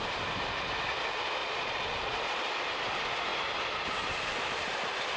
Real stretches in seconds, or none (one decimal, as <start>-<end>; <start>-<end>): 0.0-1.4; 2.4-5.2